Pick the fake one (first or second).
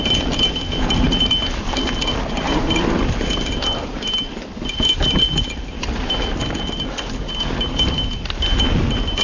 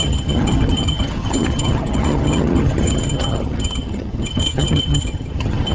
second